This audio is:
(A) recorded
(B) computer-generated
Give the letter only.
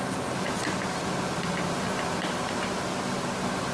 A